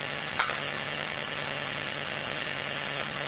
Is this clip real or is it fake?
fake